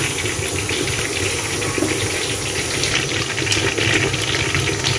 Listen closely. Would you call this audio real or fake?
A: real